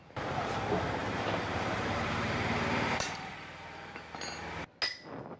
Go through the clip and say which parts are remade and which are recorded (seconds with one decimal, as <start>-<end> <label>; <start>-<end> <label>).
0.0-1.0 recorded; 1.0-3.3 remade; 3.3-5.4 recorded